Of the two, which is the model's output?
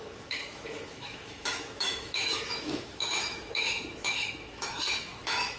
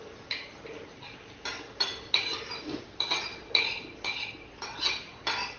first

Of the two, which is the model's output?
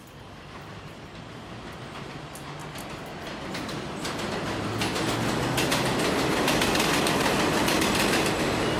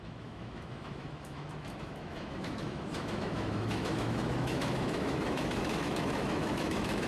second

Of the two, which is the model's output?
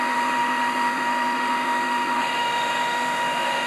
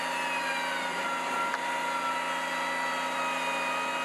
first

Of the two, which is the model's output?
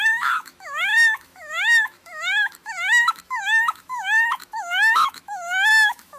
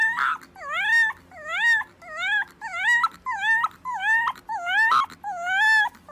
first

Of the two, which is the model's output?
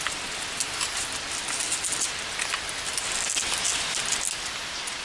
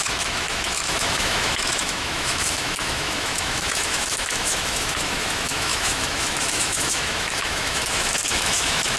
second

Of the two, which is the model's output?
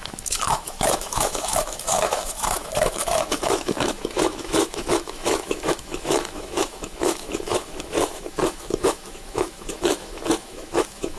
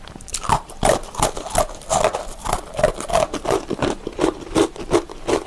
first